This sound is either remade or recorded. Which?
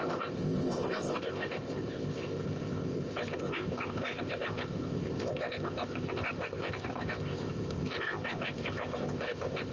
remade